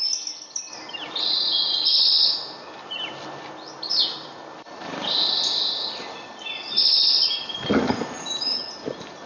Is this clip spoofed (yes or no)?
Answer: no